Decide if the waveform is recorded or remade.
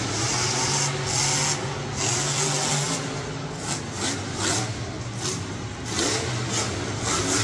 recorded